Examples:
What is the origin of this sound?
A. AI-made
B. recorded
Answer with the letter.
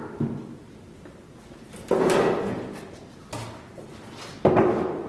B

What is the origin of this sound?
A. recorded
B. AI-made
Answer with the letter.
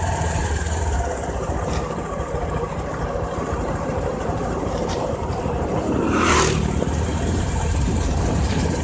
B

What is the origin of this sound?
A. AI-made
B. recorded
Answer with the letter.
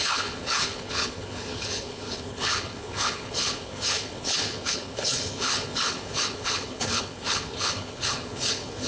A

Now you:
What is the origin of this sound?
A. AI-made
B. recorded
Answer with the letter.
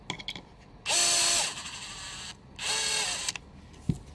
B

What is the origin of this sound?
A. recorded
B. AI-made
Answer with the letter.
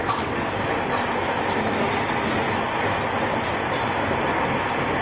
A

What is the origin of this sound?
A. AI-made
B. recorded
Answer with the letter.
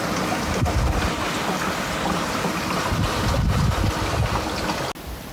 B